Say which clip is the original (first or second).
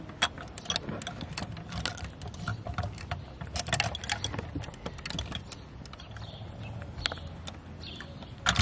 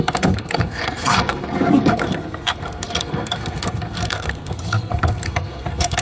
first